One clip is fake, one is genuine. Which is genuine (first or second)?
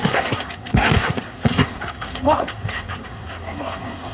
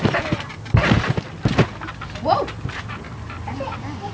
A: second